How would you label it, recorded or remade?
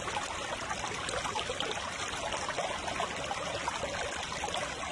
recorded